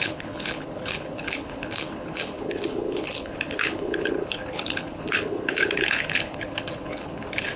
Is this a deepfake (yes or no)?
yes